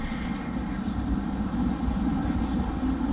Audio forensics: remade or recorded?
recorded